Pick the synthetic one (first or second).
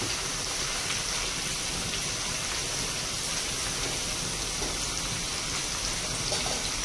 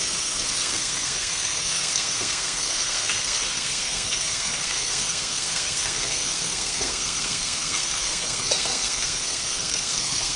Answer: second